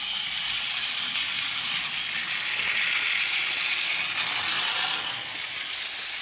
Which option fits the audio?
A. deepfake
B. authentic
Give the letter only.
B